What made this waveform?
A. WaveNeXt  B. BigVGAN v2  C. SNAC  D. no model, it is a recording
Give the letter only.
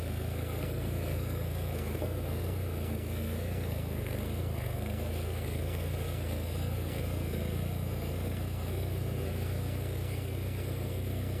C